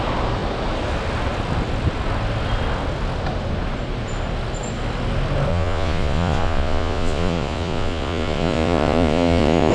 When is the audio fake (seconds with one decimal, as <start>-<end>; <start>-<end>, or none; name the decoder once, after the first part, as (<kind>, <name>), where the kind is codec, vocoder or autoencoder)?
5.5-9.7 (vocoder, Vocos)